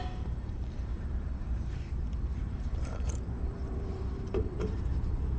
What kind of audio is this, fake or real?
fake